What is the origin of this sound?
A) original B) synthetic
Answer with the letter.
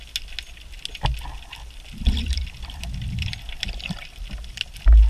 A